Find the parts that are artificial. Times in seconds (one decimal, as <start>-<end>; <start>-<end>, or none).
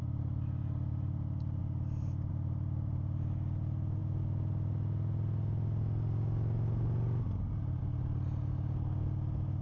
none